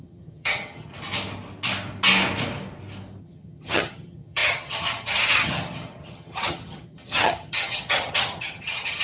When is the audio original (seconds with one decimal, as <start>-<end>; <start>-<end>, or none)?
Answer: 0.9-3.2